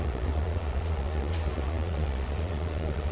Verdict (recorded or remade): remade